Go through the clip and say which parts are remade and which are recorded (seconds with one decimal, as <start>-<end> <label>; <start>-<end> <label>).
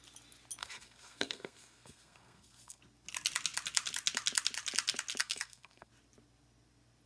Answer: 0.0-0.6 recorded; 0.6-2.8 remade; 2.8-5.2 recorded; 5.2-5.9 remade; 5.9-7.1 recorded